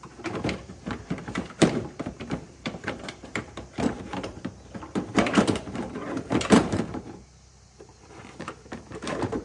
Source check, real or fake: fake